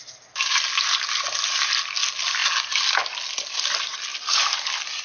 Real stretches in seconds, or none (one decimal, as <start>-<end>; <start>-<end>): 0.0-5.0